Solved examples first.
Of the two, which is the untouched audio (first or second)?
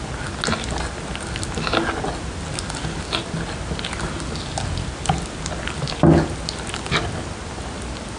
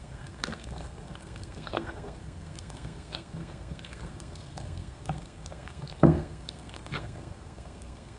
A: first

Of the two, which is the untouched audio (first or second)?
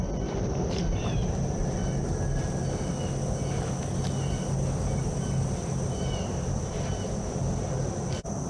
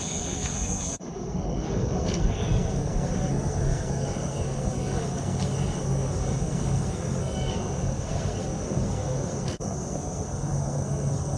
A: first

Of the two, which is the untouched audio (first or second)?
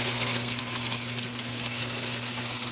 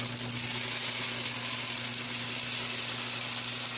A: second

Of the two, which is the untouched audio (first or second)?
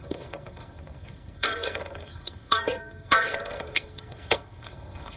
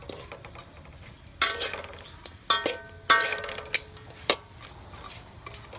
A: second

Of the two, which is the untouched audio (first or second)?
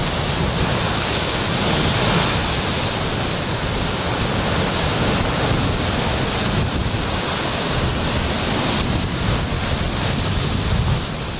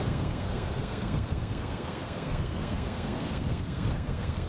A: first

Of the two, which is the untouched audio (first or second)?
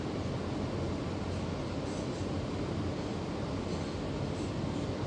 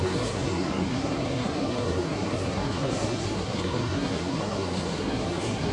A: first